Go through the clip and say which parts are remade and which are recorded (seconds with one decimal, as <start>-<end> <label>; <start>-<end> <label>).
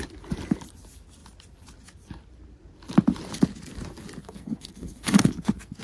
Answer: 0.0-4.2 recorded; 4.2-5.8 remade